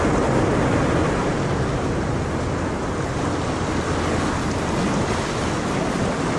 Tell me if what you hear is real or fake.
real